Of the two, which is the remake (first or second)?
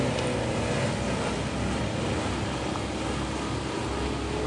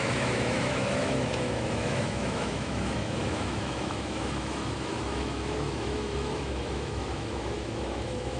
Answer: second